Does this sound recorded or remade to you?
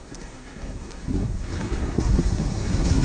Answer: remade